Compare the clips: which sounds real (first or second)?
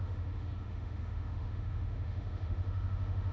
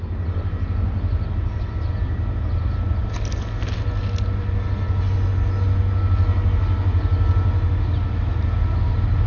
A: second